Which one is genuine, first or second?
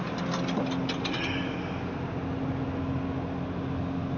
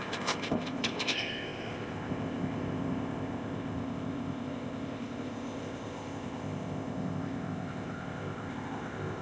first